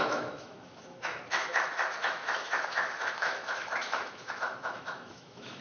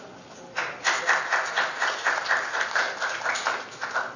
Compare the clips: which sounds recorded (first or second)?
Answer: second